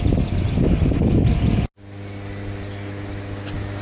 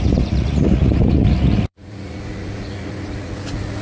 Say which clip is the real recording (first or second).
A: first